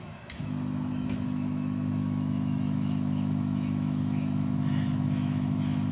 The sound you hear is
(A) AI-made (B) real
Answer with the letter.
A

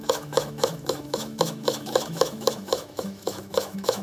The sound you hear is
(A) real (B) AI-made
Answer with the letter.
B